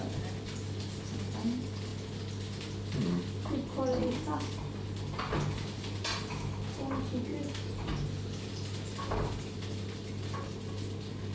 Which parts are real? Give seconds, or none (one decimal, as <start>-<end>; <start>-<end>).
0.0-11.3